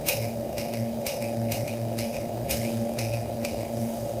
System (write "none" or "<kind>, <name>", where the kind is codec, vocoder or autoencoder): autoencoder, DAC-VAE